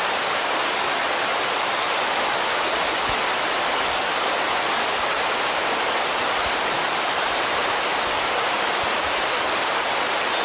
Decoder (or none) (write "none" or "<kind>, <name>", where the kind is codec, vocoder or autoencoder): none